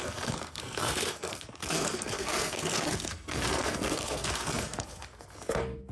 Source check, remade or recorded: remade